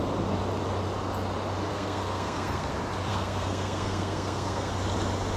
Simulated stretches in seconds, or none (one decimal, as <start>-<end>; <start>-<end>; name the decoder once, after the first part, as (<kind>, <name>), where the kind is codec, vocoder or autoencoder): 1.7-2.7 (codec, SNAC); 3.1-4.7